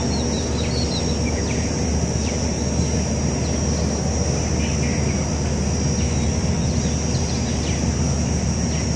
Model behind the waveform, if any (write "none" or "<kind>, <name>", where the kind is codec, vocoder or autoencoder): none